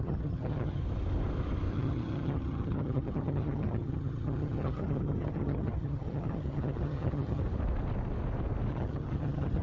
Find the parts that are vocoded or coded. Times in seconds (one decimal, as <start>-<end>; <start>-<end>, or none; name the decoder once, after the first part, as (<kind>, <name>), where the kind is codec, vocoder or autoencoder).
0.0-0.8 (vocoder, HiFi-GAN); 1.7-7.4; 8.7-9.6